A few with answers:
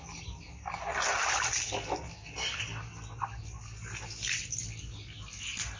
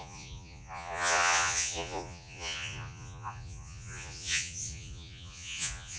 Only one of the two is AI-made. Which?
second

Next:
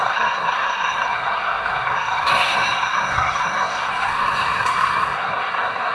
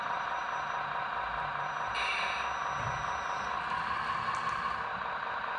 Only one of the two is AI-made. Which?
first